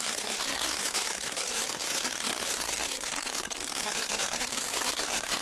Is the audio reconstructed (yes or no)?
yes